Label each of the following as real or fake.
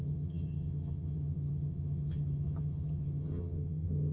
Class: fake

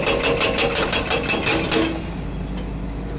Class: real